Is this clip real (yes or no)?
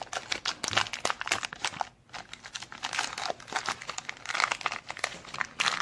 yes